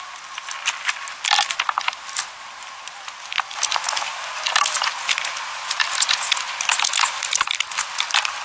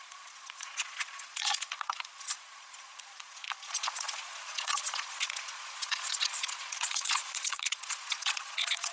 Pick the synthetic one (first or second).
second